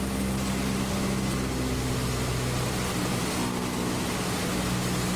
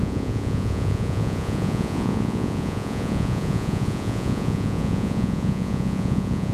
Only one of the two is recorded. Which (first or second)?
first